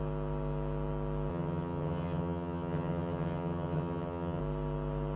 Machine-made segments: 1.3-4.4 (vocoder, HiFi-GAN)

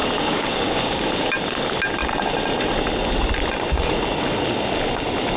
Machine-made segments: 0.0-1.1 (codec, DAC)

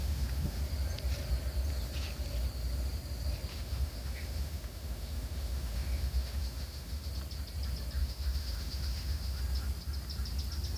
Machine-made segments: 0.0-0.6 (autoencoder, DAC-VAE); 3.5-7.1; 8.0-9.4

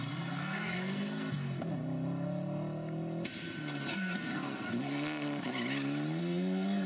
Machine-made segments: 0.4-1.7 (codec, SNAC); 3.9-4.7; 6.2-6.9

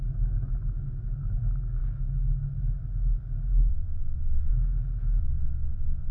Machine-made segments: 3.7-4.5 (vocoder, WaveNeXt); 5.2-6.1

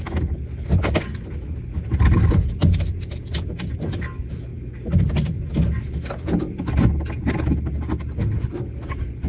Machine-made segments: none